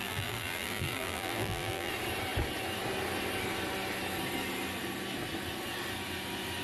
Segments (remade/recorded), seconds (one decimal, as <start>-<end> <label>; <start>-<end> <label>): 0.0-1.9 remade; 1.9-6.6 recorded